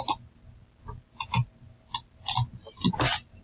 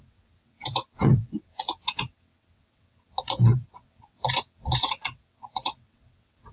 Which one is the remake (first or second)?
second